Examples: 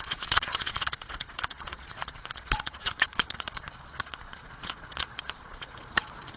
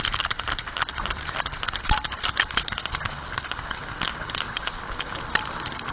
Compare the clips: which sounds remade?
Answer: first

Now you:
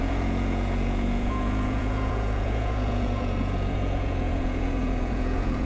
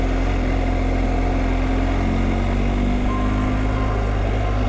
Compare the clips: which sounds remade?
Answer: first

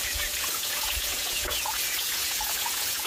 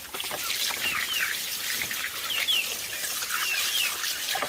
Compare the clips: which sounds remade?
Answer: first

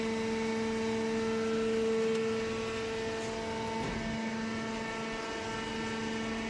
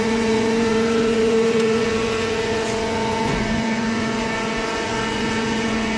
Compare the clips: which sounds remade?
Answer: second